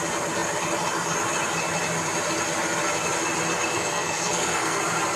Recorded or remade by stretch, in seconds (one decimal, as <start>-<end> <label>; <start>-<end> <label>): 0.0-3.7 recorded; 3.7-4.8 remade; 4.8-5.2 recorded